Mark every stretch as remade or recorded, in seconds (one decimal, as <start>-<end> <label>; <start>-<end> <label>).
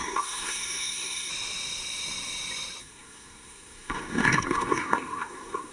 0.0-1.3 remade; 1.3-2.8 recorded; 2.8-5.7 remade